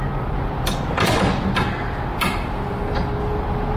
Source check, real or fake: real